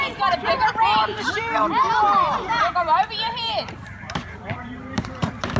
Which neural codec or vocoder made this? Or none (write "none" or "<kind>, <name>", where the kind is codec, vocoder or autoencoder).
vocoder, BigVGAN v2